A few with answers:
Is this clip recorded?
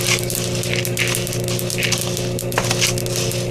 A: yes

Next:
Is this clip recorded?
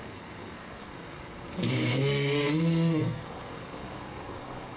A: no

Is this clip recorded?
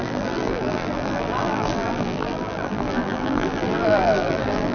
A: no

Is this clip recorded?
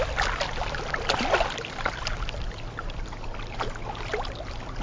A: yes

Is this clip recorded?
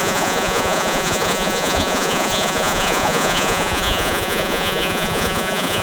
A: no